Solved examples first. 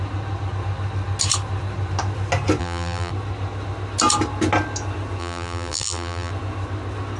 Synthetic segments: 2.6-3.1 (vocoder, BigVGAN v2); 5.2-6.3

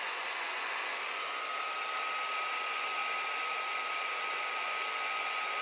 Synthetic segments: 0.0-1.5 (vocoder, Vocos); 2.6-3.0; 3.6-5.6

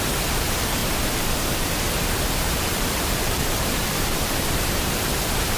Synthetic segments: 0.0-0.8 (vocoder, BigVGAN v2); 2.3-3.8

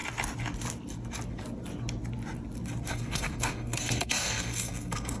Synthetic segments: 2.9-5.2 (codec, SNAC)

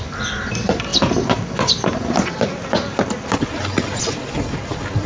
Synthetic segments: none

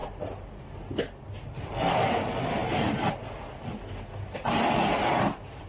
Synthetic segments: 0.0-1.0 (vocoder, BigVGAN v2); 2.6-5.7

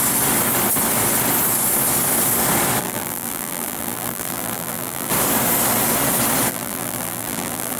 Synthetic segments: 2.8-5.1 (vocoder, BigVGAN v2); 6.5-7.8